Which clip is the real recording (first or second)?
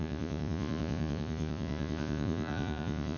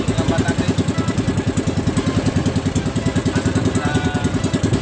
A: second